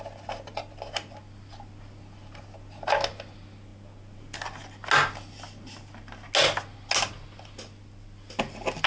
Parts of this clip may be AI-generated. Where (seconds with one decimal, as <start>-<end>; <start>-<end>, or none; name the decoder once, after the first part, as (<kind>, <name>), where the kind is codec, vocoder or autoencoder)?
none